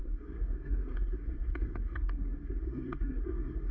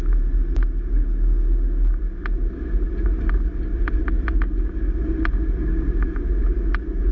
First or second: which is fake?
first